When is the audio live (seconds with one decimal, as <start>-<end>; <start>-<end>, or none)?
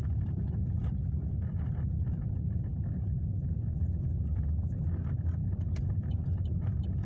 none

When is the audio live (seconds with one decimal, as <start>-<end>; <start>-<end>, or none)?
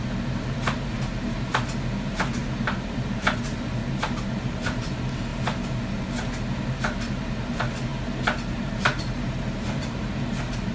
3.8-4.3; 5.3-6.8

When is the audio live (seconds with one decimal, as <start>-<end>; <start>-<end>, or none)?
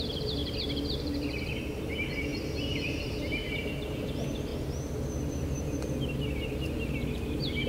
0.4-1.0; 4.5-5.3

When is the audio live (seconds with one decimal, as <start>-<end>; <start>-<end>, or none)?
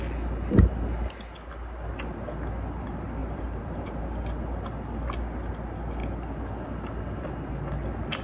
0.0-3.2; 4.0-8.2